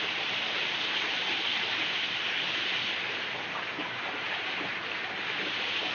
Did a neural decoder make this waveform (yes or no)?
no